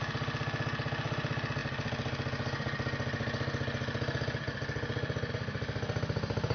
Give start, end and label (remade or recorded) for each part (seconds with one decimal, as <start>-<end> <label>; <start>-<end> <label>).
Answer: 0.0-6.5 recorded